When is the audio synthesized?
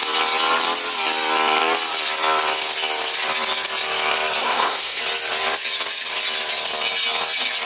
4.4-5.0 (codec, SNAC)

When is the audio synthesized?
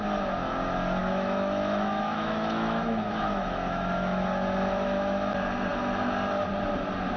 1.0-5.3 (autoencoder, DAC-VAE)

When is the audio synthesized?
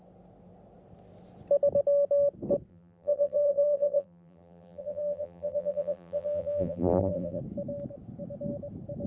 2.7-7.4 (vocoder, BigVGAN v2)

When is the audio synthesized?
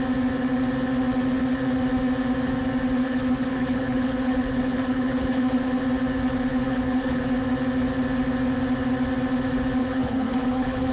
3.0-5.8 (codec, HILCodec); 6.5-7.2; 9.8-10.9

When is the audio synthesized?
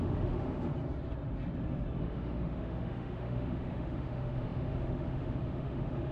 0.0-0.7 (autoencoder, DAC-VAE); 2.0-6.1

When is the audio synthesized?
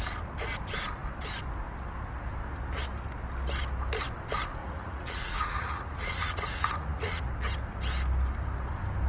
4.6-7.3 (vocoder, Vocos)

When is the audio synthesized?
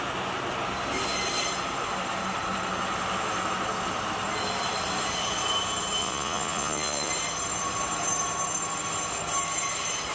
6.0-7.1 (vocoder, Vocos)